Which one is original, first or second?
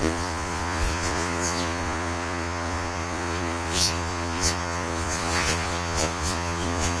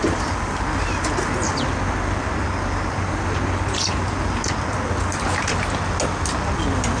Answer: second